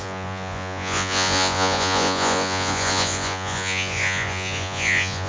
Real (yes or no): no